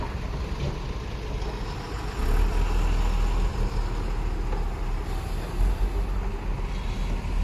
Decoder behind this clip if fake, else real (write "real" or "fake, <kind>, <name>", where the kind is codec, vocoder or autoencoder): real